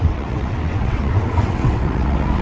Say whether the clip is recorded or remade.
remade